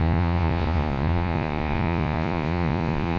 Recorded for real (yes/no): no